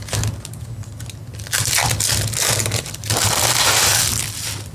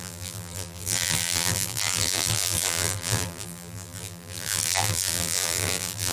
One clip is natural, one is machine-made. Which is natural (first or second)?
first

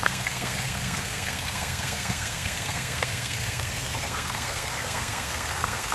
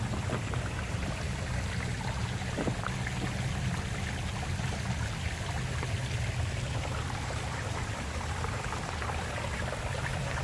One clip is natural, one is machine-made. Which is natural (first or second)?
second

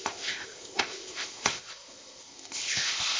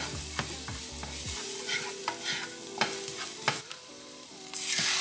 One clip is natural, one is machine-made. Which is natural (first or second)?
second